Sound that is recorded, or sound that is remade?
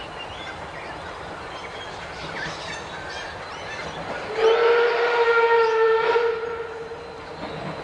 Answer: recorded